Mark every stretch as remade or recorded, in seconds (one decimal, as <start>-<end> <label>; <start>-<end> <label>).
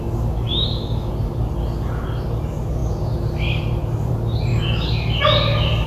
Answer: 0.0-0.5 recorded; 0.5-1.1 remade; 1.1-4.5 recorded; 4.5-5.2 remade; 5.2-5.9 recorded